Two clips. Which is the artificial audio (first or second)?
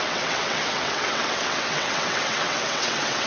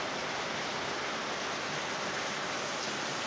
first